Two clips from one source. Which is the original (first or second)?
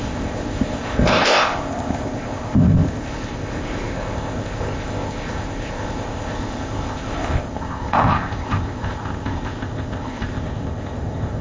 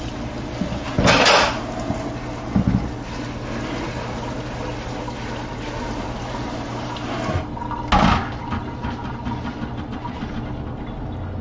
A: second